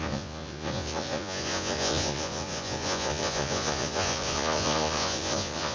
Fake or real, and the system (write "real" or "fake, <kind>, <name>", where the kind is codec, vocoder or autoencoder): fake, vocoder, Vocos